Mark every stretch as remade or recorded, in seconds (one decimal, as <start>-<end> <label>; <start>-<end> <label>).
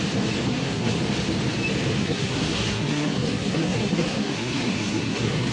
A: 0.0-0.5 recorded; 0.5-1.0 remade; 1.0-2.0 recorded; 2.0-5.5 remade